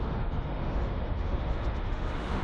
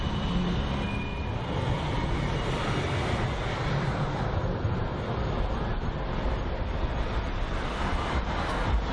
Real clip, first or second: second